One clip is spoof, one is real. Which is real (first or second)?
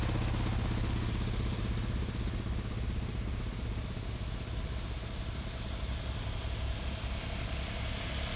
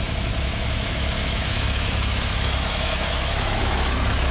first